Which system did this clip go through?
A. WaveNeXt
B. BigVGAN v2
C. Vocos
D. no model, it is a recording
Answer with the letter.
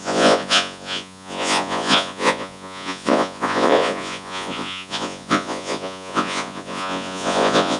C